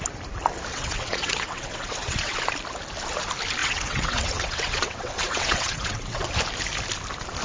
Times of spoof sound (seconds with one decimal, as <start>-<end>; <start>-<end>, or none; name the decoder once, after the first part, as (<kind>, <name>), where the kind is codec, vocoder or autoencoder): 0.7-2.4 (vocoder, WaveNeXt); 3.6-6.3